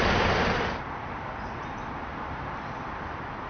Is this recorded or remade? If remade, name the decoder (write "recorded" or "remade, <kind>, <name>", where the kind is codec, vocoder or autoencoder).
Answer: remade, vocoder, BigVGAN v2